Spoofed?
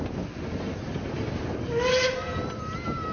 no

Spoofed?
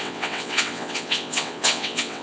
yes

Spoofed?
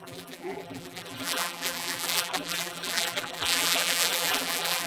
yes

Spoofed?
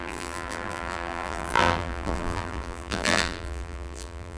yes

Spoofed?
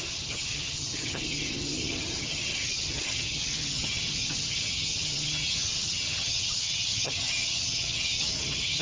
yes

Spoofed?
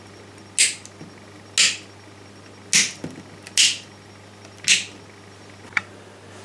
no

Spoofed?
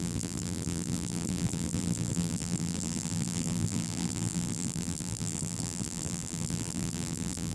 yes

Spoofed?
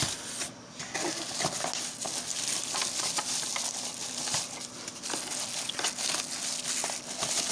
no